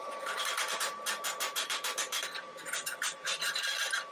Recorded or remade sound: remade